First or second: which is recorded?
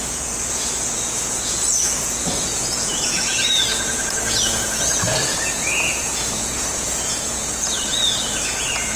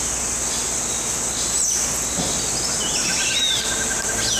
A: second